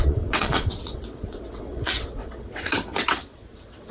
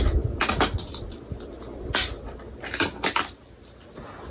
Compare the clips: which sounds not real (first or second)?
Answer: first